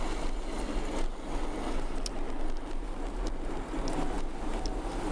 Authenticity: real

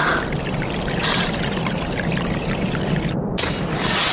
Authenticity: real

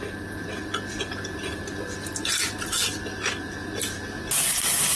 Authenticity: real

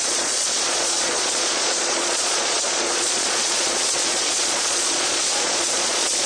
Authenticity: fake